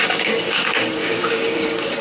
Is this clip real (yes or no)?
no